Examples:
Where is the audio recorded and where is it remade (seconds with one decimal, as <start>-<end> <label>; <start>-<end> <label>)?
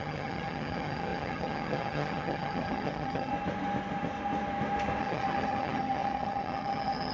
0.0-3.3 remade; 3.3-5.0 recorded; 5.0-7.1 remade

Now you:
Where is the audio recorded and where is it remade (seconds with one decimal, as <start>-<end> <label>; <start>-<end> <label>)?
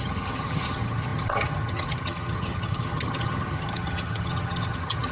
0.0-5.1 remade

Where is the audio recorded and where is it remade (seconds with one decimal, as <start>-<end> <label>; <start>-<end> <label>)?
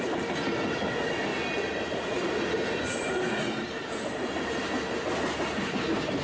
0.0-6.2 recorded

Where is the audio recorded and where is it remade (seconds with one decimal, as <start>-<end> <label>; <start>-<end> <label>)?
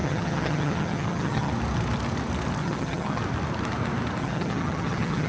0.0-1.5 remade; 1.5-2.6 recorded; 2.6-3.2 remade; 3.2-4.2 recorded; 4.2-5.3 remade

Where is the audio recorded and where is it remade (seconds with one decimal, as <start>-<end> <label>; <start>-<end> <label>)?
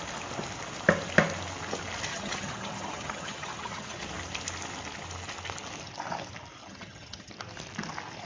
0.0-2.1 recorded; 2.1-4.0 remade; 4.0-6.6 recorded; 6.6-7.3 remade; 7.3-8.3 recorded